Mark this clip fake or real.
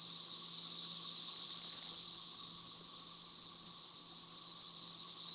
real